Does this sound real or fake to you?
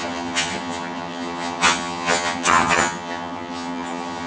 fake